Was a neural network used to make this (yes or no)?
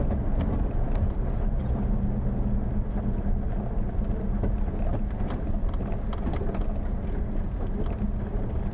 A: no